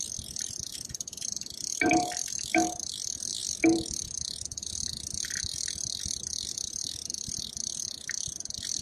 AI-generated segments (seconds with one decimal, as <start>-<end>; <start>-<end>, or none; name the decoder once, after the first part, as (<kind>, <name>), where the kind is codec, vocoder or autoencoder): 0.0-7.0 (vocoder, BigVGAN v2); 7.5-8.8